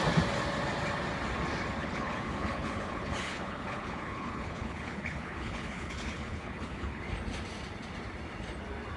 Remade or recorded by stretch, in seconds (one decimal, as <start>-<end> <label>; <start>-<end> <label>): 0.0-1.8 recorded; 1.8-7.0 remade; 7.0-9.0 recorded